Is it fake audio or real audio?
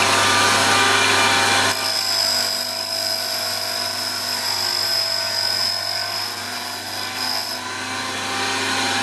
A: real